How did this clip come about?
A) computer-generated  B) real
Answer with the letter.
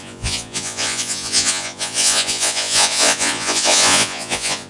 A